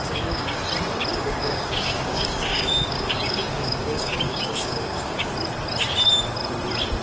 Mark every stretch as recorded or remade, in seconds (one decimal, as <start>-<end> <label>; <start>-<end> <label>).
0.0-0.6 remade; 0.6-1.1 recorded; 1.1-5.3 remade; 5.3-7.0 recorded